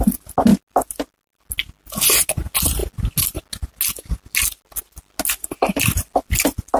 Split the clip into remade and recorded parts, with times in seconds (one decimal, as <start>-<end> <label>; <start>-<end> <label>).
0.0-6.8 recorded